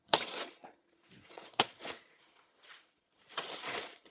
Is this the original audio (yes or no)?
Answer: no